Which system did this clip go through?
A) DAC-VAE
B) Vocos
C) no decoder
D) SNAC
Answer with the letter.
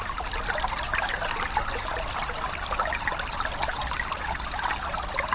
C